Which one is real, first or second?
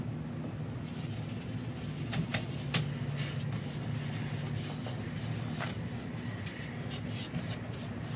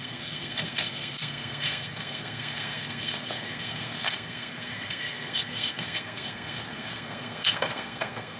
first